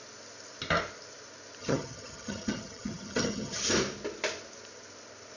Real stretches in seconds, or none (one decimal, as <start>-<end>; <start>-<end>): 0.0-1.6; 3.6-5.4